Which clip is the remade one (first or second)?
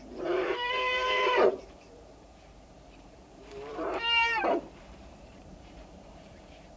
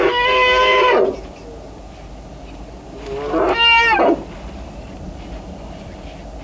first